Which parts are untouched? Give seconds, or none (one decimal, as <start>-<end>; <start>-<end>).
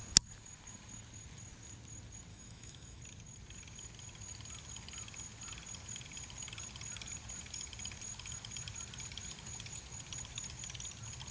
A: 0.0-2.3; 3.0-11.3